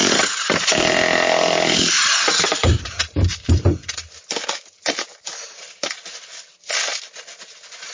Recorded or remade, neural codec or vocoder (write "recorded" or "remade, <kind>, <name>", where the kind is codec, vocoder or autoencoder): recorded